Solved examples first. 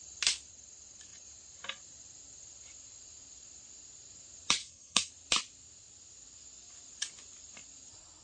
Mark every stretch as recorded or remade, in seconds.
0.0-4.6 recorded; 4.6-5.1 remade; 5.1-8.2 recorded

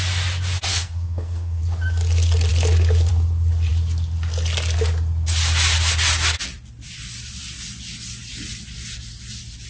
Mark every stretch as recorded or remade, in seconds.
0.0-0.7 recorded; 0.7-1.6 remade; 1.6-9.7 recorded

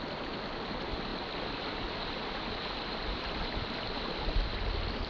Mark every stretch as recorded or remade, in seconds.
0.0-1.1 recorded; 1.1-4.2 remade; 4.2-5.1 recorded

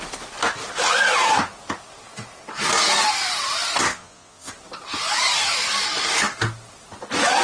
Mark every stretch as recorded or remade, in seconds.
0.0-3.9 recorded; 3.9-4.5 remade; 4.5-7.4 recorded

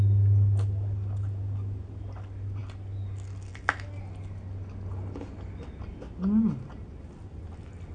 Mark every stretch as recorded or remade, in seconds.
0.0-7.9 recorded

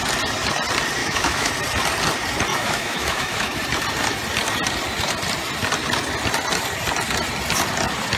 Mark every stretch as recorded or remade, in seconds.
0.0-1.0 recorded; 1.0-1.5 remade; 1.5-2.5 recorded; 2.5-3.6 remade; 3.6-8.2 recorded

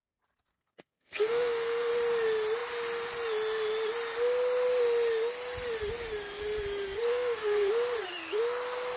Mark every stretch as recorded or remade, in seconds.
0.0-0.5 recorded; 0.5-1.9 remade; 1.9-7.1 recorded; 7.1-7.7 remade; 7.7-9.0 recorded

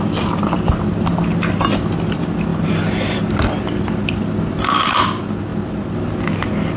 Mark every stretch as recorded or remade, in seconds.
0.0-2.5 recorded; 2.5-3.3 remade; 3.3-6.8 recorded